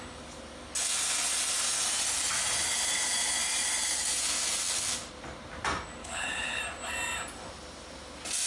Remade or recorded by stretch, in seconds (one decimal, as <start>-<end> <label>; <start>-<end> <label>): 0.0-6.0 recorded; 6.0-6.6 remade; 6.6-8.5 recorded